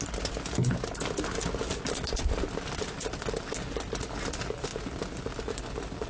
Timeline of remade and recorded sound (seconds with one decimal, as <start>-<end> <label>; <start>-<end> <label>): 0.0-6.1 recorded